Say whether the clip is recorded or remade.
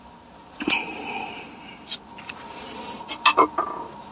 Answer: recorded